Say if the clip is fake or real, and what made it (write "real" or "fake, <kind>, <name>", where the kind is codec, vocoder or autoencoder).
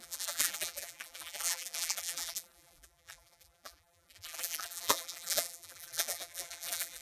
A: fake, vocoder, BigVGAN v2